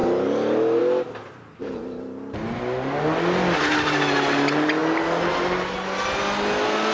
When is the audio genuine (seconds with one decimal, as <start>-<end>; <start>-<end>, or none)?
0.0-6.9